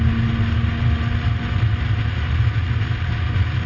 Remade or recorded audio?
recorded